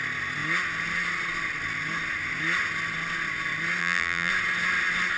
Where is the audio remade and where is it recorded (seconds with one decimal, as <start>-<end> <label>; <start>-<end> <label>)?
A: 0.0-3.8 recorded; 3.8-4.3 remade; 4.3-5.2 recorded